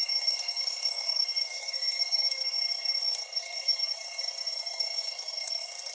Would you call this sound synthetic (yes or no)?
yes